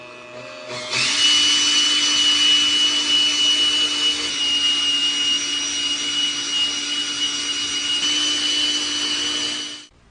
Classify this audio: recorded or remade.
recorded